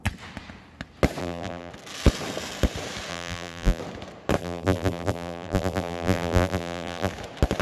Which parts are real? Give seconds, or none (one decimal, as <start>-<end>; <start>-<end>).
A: 0.0-1.2; 1.7-3.1; 3.8-4.4; 7.1-7.6